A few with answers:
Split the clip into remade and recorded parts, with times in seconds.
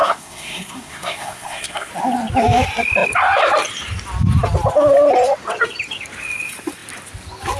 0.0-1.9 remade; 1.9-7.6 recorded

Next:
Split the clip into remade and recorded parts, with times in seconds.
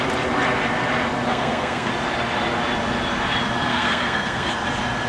0.0-1.3 recorded; 1.3-1.9 remade; 1.9-3.7 recorded; 3.7-4.5 remade; 4.5-5.1 recorded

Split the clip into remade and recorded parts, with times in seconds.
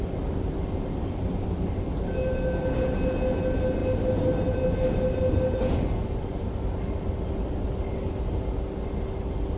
0.0-9.6 recorded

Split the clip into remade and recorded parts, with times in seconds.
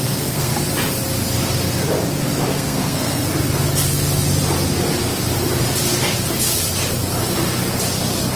0.0-0.5 remade; 0.5-2.5 recorded; 2.5-3.3 remade; 3.3-8.4 recorded